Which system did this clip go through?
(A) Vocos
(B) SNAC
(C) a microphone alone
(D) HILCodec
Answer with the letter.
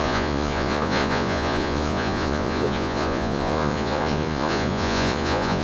A